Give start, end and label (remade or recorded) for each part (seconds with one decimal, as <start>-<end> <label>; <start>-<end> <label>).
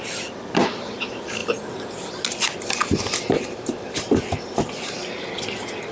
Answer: 0.0-5.9 recorded